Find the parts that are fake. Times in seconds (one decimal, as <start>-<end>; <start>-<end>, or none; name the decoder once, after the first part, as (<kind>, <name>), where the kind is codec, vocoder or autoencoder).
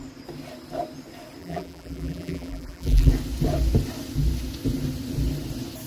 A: 1.4-3.1 (vocoder, BigVGAN v2)